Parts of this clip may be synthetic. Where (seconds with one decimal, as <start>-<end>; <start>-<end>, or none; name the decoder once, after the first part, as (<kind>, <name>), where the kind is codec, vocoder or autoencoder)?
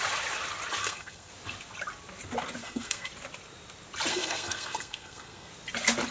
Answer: 0.8-1.3 (codec, SNAC); 2.6-3.1; 4.1-5.5